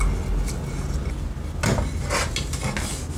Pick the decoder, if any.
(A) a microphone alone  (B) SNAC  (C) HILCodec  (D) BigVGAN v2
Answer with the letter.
A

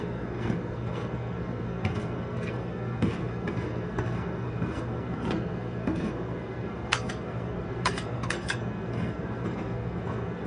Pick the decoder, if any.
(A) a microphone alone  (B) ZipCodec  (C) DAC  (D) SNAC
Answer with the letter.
D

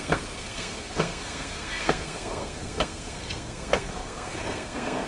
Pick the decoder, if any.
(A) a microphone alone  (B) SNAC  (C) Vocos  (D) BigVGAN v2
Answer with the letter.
B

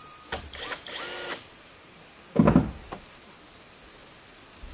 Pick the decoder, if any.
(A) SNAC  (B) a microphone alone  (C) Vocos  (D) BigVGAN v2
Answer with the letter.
B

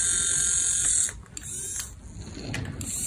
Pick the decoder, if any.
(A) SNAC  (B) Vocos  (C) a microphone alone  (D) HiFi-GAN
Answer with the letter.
C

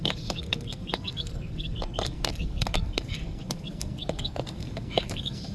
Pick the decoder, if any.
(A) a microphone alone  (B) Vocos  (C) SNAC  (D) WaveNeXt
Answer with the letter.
C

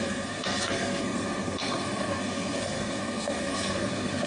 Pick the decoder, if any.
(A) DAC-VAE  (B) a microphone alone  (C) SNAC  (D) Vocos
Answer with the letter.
C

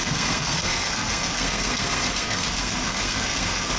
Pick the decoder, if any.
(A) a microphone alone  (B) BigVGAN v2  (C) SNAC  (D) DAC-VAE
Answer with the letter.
C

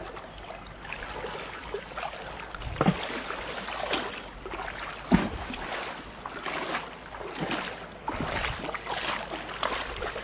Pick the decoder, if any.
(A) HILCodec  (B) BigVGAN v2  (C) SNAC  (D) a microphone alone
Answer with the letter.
D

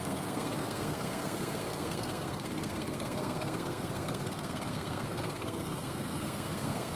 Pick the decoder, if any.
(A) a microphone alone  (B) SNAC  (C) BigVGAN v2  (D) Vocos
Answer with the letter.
B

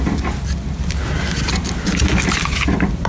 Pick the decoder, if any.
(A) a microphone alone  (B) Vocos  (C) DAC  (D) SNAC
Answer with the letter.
A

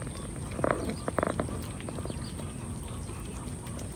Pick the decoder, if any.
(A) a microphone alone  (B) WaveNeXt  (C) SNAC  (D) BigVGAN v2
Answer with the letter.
A